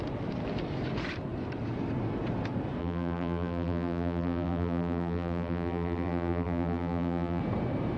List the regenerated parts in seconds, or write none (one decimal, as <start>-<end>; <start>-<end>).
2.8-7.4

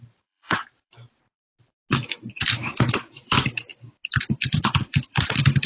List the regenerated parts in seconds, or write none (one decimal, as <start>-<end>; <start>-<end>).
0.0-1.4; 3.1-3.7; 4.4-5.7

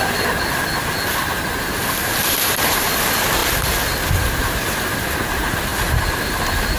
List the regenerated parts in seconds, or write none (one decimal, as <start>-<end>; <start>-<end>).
2.0-2.9; 5.7-6.2

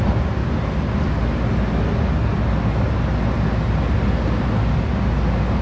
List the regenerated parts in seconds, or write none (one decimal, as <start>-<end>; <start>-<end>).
none

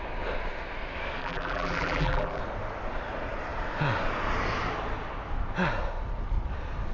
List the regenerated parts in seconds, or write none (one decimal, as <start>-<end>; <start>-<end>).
1.2-2.4

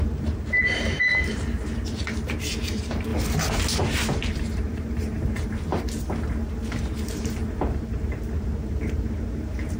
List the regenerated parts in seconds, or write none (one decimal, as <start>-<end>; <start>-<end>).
0.0-3.1; 3.8-5.7; 6.8-9.8

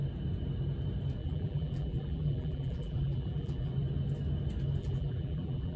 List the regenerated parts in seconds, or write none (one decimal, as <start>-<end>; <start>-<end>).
1.2-3.7; 4.8-5.8